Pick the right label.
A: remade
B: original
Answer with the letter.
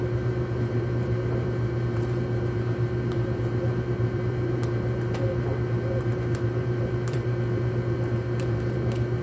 A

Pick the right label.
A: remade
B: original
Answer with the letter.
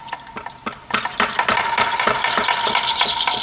B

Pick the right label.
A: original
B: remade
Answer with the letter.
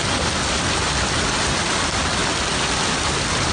A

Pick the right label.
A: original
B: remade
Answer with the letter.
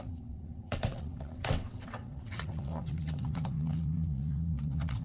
B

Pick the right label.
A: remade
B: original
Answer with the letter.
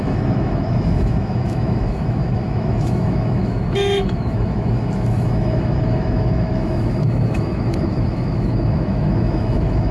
A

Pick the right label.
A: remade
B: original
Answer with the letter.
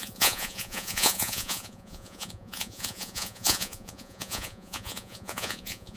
A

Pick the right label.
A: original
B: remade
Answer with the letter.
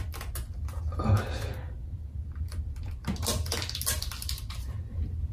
A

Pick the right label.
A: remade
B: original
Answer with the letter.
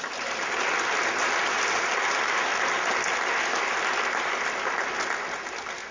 B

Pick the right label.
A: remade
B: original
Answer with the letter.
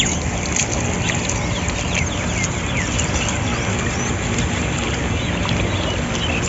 B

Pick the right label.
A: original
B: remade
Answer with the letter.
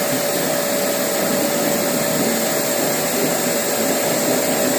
A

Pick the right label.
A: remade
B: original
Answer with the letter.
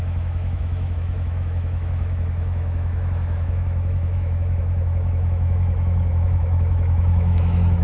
A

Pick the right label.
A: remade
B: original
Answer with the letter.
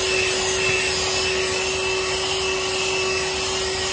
B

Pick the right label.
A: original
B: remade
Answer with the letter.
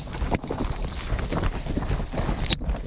A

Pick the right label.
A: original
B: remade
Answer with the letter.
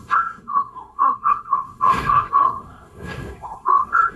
B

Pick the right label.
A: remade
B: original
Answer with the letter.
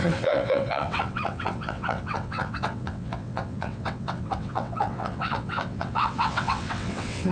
A